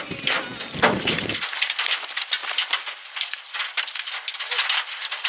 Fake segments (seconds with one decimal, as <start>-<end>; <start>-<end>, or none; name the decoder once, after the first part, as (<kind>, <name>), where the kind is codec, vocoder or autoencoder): 2.4-3.4 (vocoder, BigVGAN v2)